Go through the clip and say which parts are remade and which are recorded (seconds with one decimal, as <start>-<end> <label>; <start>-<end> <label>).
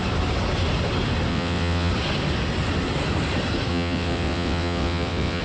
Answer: 0.0-1.3 recorded; 1.3-1.9 remade; 1.9-3.7 recorded; 3.7-5.4 remade